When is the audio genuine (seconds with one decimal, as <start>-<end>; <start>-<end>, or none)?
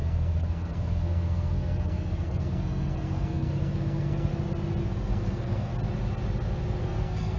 4.3-4.8; 5.7-6.8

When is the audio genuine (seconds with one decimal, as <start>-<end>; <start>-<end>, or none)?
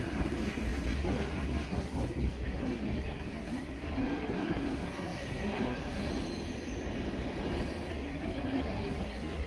6.1-7.9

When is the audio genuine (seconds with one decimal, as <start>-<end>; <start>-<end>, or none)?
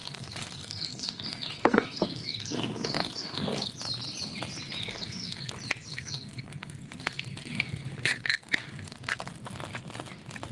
3.7-4.8; 5.5-5.9; 9.3-10.5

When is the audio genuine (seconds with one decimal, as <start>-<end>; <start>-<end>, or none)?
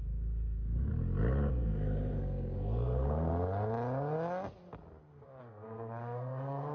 0.9-1.5; 3.3-5.4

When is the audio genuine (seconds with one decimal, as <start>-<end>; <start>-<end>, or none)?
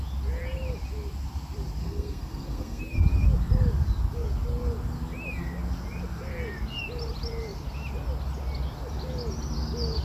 0.0-1.8; 2.8-10.0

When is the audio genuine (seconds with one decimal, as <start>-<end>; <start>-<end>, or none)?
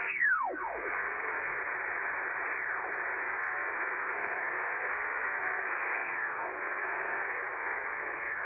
1.6-3.2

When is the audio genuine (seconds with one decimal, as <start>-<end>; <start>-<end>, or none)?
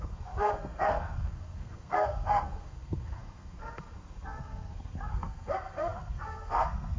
none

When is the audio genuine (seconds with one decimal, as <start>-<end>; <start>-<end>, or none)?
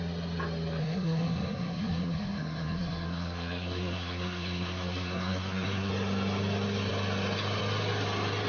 0.0-0.8; 5.9-8.5